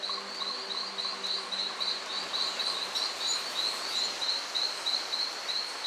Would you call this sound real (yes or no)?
yes